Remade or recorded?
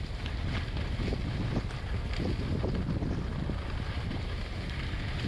recorded